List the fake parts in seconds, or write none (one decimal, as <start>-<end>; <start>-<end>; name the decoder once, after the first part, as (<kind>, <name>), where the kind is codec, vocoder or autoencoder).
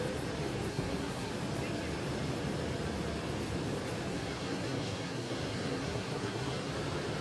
0.7-1.3 (codec, SNAC); 4.1-6.7